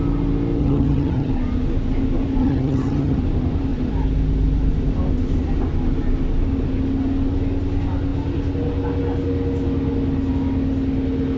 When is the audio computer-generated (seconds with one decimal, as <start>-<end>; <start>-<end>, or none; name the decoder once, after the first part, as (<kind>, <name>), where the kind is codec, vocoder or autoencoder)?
0.6-1.3 (vocoder, HiFi-GAN); 2.4-3.2